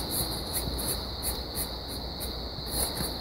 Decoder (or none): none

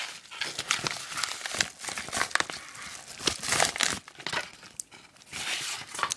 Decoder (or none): none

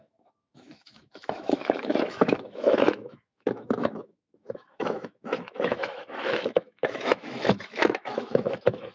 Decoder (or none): autoencoder, DAC-VAE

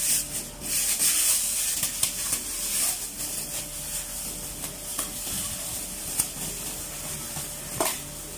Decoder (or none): none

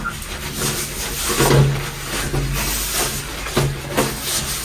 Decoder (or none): none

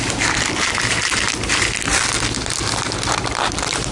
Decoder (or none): none